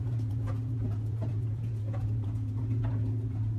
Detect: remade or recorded remade